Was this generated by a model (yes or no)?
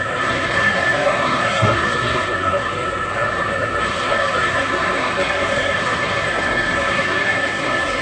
yes